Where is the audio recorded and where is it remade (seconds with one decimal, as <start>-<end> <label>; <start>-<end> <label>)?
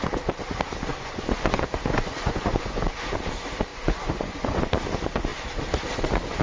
0.0-0.9 recorded; 0.9-2.8 remade; 2.8-3.7 recorded; 3.7-4.6 remade; 4.6-6.4 recorded